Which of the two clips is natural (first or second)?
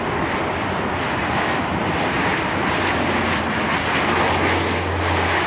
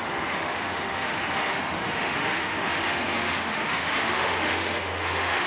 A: first